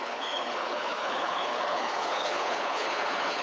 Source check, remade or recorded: remade